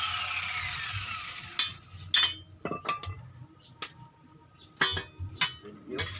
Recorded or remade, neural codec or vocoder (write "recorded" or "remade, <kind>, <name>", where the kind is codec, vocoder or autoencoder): recorded